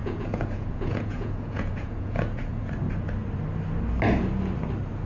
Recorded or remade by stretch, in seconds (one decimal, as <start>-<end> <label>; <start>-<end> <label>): 0.0-2.7 remade; 2.7-5.1 recorded